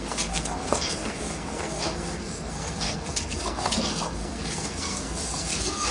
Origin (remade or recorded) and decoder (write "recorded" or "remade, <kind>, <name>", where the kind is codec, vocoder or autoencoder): remade, codec, SNAC